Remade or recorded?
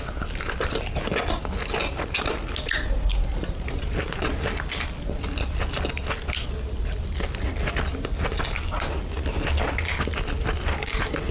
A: recorded